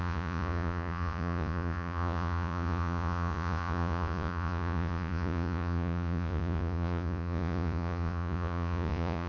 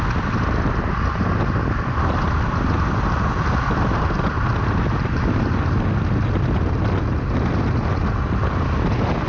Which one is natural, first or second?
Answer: second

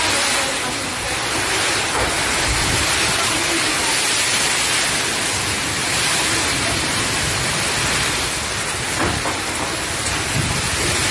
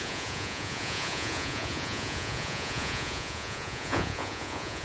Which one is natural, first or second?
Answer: first